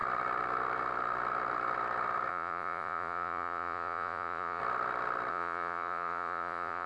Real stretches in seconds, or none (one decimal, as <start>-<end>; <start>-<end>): 0.0-2.3; 4.6-5.3